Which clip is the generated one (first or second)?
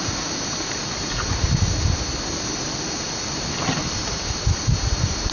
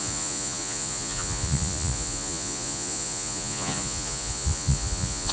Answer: second